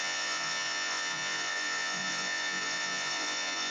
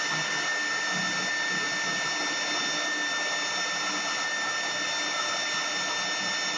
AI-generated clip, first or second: first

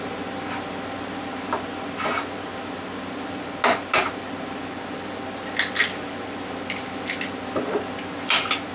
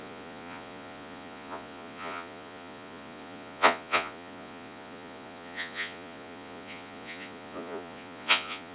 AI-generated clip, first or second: second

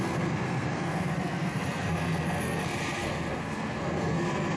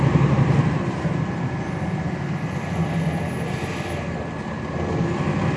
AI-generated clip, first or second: first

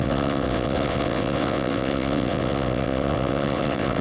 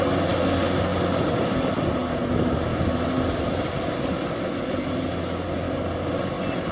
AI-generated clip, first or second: first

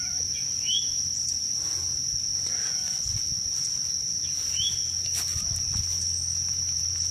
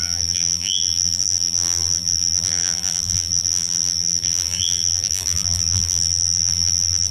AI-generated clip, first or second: second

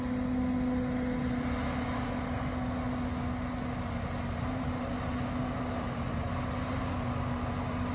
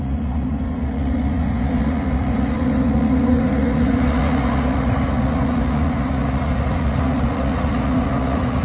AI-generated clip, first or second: second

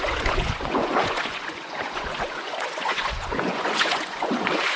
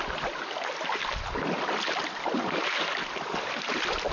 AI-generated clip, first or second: first